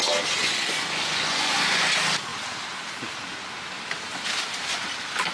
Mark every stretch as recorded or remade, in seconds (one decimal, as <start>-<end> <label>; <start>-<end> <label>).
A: 0.0-0.4 recorded; 0.4-1.9 remade; 1.9-5.3 recorded